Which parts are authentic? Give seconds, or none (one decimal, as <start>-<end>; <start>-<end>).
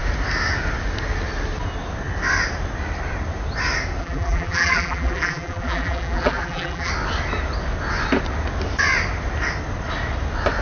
0.0-4.0; 6.9-10.6